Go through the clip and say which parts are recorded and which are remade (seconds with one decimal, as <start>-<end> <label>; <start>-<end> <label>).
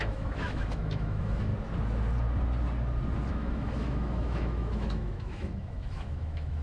0.0-1.5 remade; 1.5-3.3 recorded; 3.3-6.6 remade